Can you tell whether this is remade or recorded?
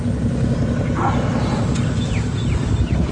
recorded